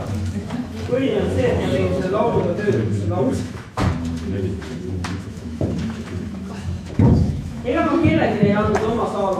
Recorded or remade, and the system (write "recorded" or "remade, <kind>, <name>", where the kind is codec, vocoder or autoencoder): remade, autoencoder, DAC-VAE